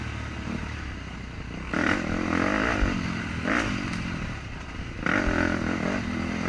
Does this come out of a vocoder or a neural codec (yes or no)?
no